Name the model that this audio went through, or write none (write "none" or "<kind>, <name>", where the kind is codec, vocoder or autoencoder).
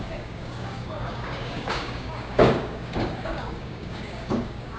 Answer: codec, DAC